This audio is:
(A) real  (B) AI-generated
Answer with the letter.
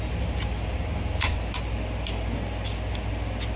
A